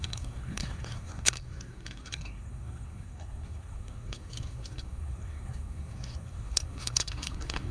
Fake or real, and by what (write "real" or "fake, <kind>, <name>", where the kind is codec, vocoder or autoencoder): fake, codec, SNAC